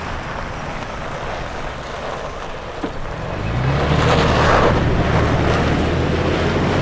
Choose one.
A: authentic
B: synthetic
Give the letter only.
A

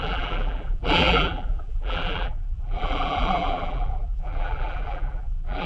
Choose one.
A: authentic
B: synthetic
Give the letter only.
B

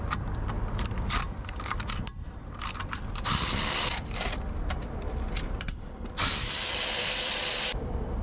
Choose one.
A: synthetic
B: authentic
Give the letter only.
A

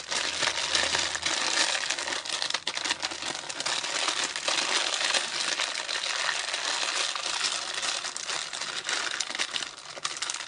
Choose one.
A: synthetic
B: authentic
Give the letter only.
B